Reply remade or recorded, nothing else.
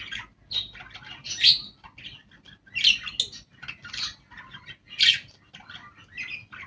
recorded